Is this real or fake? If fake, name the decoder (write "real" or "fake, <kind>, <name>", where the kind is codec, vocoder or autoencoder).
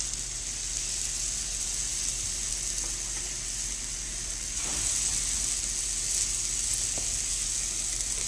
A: real